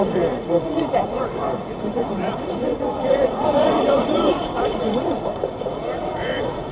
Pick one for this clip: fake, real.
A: fake